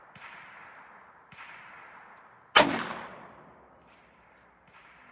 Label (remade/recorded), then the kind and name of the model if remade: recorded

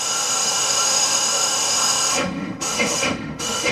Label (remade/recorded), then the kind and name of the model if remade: remade, autoencoder, DAC-VAE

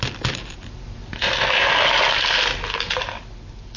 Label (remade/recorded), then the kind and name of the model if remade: recorded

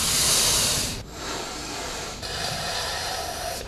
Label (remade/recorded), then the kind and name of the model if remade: remade, vocoder, BigVGAN v2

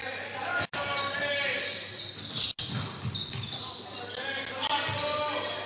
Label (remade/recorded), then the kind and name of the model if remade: recorded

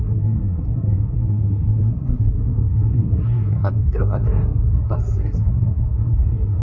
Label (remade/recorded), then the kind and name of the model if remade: remade, codec, SNAC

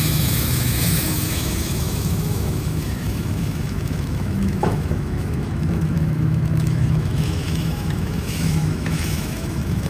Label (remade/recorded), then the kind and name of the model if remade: remade, autoencoder, DAC-VAE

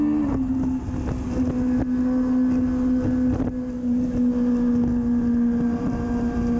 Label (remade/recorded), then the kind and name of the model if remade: recorded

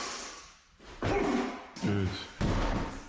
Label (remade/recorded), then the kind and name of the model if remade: remade, vocoder, BigVGAN v2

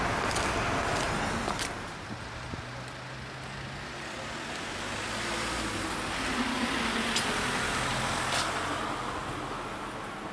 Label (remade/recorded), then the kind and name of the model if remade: recorded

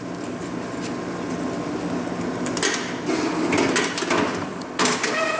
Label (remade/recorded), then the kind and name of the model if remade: recorded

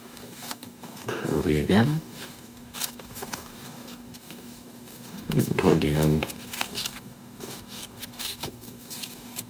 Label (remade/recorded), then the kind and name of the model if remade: remade, codec, DAC